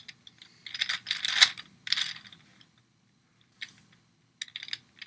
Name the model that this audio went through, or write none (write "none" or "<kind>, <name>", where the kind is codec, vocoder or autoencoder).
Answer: none